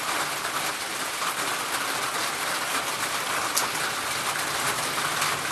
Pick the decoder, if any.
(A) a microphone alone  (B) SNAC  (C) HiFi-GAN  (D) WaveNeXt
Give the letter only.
A